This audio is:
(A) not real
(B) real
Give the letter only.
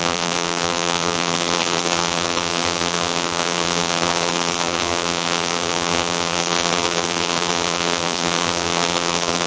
A